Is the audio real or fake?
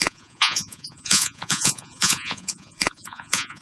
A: fake